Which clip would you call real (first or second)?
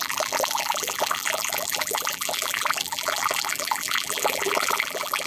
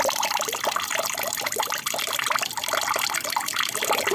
second